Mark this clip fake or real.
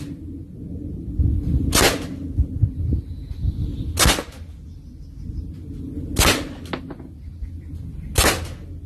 real